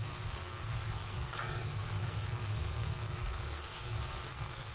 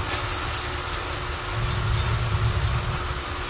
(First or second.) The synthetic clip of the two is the first